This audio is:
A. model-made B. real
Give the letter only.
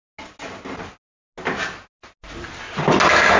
B